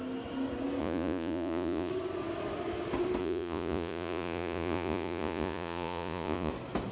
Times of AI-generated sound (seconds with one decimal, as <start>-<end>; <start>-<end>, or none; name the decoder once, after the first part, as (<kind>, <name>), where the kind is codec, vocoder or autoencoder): 0.8-1.9 (vocoder, Vocos); 3.2-6.5